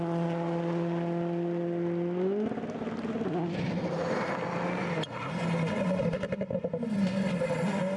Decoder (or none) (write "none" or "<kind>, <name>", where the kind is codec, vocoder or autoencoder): none